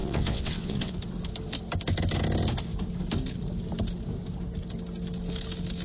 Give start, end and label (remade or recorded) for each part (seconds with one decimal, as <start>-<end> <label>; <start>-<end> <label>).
0.0-0.9 remade; 0.9-5.8 recorded